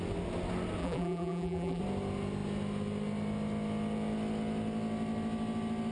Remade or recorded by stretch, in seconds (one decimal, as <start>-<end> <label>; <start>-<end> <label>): 0.0-0.8 recorded; 0.8-1.8 remade; 1.8-5.9 recorded